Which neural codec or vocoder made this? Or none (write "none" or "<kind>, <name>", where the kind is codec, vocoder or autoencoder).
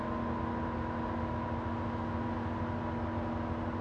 none